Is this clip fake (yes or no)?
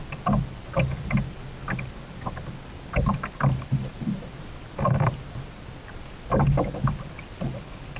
no